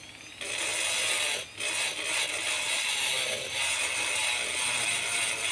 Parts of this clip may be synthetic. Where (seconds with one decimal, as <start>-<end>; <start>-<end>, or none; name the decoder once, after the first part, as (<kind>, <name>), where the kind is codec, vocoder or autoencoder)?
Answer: none